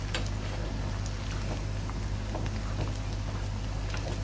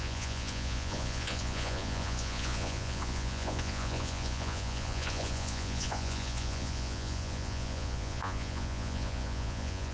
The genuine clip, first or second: first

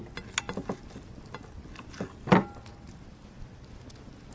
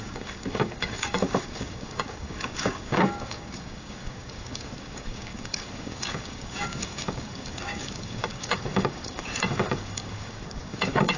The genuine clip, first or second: first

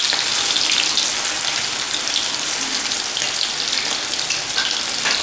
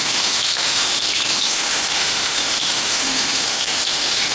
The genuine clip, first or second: first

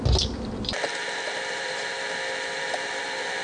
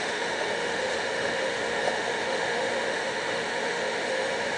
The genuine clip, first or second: first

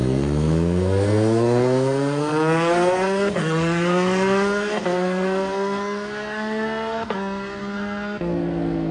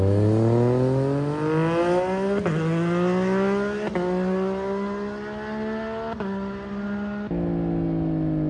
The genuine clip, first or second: second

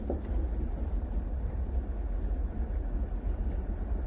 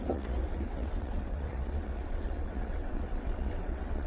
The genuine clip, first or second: first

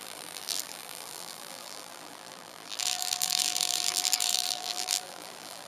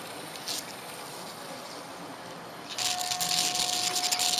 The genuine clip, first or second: second